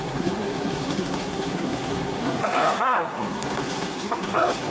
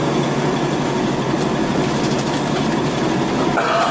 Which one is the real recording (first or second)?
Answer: second